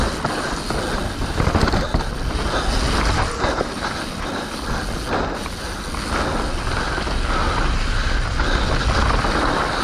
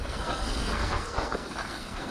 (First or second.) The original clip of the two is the first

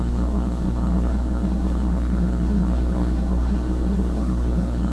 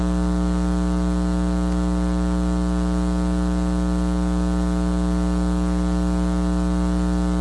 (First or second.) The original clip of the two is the second